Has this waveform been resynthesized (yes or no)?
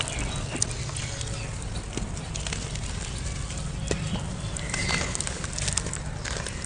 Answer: no